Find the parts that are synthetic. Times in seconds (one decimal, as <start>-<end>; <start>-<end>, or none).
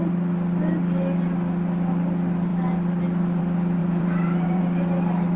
3.8-4.6